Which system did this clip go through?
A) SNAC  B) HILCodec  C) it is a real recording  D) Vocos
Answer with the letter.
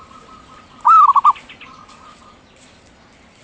C